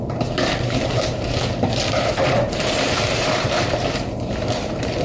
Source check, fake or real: fake